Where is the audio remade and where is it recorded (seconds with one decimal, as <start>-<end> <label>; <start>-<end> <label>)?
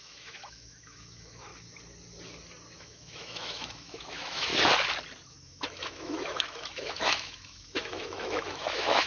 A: 0.0-1.5 remade; 1.5-2.8 recorded; 2.8-4.5 remade; 4.5-5.3 recorded; 5.3-9.1 remade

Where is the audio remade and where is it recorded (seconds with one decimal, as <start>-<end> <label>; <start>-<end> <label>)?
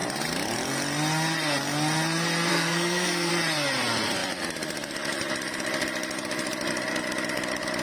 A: 0.0-2.5 recorded; 2.5-3.3 remade; 3.3-7.8 recorded